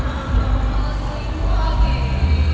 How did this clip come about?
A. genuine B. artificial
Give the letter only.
A